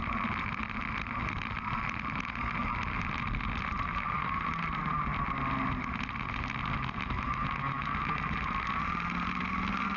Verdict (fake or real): real